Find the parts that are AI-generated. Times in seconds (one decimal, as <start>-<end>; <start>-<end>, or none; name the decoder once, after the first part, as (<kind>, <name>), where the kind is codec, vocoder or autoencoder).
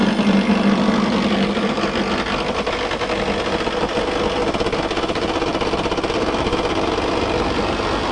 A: none